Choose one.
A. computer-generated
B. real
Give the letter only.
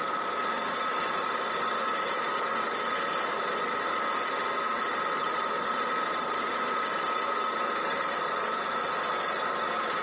B